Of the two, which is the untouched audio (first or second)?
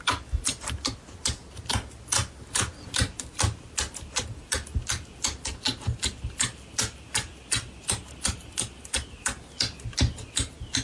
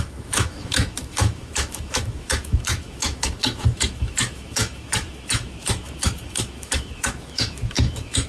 first